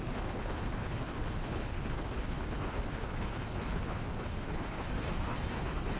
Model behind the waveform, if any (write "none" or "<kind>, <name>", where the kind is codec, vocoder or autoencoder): codec, HILCodec